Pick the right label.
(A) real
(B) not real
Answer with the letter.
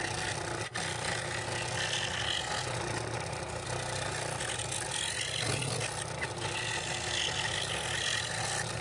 A